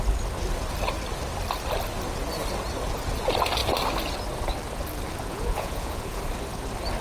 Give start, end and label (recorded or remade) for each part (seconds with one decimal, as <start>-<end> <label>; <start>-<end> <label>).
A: 0.0-5.3 recorded; 5.3-6.2 remade; 6.2-7.0 recorded